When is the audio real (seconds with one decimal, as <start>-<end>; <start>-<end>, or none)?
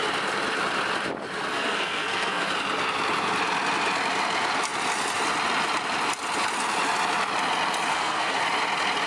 0.0-1.5; 2.5-7.9; 8.4-9.1